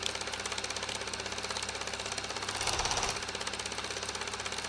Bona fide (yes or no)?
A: yes